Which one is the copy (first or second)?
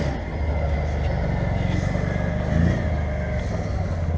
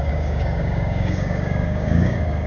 second